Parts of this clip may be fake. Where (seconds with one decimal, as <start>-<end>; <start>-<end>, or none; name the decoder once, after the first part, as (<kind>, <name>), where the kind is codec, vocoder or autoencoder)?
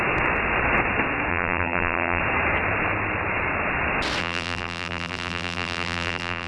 1.3-2.2 (vocoder, BigVGAN v2); 4.2-6.5